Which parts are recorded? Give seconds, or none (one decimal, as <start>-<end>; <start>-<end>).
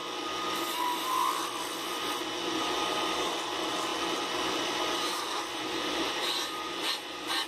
0.0-7.5